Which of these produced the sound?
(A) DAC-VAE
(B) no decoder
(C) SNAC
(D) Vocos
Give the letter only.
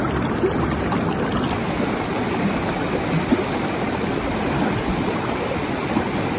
B